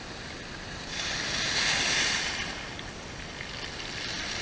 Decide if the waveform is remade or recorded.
recorded